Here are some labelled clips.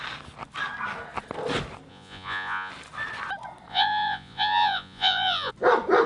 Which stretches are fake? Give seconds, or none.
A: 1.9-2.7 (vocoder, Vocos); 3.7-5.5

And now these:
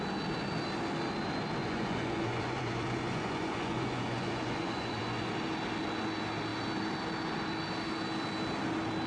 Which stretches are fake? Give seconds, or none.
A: 1.6-5.3 (vocoder, Vocos)

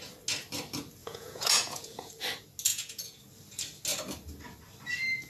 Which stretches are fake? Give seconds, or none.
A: 1.0-2.1 (vocoder, Vocos); 2.7-3.2

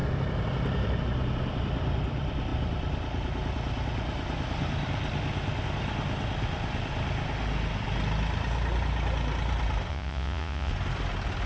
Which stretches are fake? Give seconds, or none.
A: 9.9-10.7 (vocoder, Vocos)

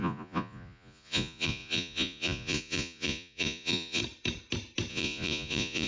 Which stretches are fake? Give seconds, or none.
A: 0.0-4.0 (vocoder, Vocos); 4.9-5.9

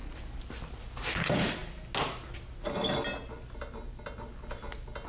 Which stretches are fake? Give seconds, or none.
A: none